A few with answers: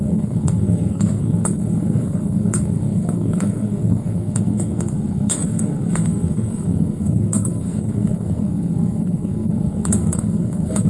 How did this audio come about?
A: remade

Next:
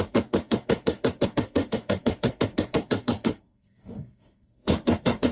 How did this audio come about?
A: remade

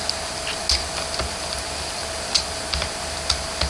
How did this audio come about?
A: recorded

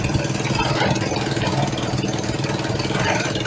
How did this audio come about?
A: recorded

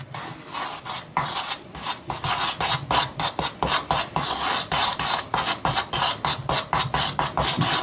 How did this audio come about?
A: recorded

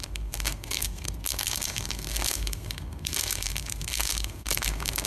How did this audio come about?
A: remade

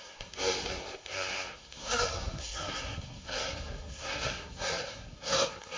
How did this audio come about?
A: remade